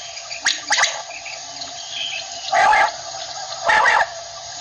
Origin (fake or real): real